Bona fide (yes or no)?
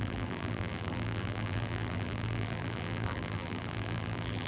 no